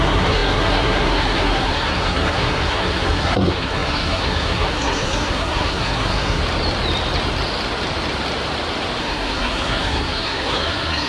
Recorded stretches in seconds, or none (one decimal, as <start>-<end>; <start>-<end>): 6.4-9.0